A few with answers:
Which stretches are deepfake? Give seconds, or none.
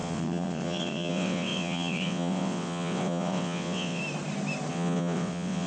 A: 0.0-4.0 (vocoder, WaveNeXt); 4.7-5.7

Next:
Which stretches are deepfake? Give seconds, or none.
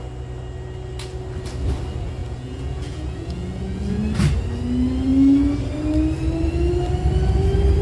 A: 2.2-4.0 (vocoder, Vocos)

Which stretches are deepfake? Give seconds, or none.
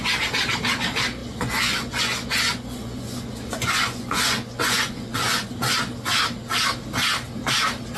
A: 1.2-5.5 (vocoder, Vocos)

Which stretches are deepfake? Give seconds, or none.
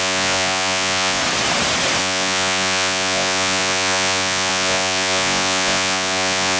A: 0.0-1.2 (vocoder, Vocos); 2.0-6.6